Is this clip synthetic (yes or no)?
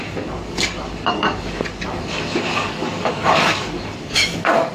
yes